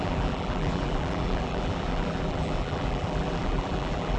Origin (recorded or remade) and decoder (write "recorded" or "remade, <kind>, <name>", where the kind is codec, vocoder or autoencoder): remade, vocoder, BigVGAN v2